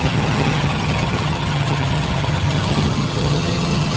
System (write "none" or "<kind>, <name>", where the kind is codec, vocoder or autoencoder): vocoder, HiFi-GAN